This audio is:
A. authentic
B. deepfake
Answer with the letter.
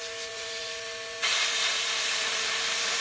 B